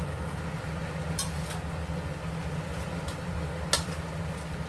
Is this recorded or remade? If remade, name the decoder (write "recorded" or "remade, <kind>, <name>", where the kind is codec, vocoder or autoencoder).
recorded